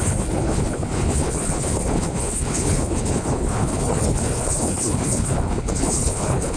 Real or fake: fake